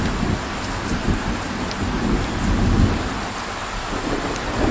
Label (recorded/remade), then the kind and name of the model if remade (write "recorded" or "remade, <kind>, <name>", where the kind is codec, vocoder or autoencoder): recorded